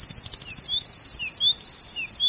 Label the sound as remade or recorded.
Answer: recorded